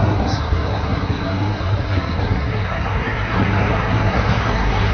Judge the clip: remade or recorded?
remade